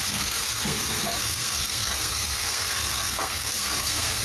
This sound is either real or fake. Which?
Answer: fake